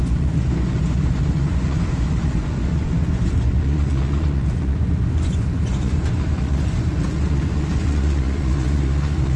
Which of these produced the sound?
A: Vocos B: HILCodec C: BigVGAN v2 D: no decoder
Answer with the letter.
A